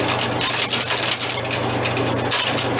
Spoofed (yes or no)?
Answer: no